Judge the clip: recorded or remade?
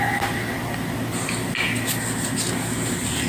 recorded